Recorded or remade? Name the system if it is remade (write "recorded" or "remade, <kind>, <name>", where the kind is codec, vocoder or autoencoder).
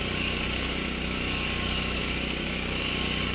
remade, codec, DAC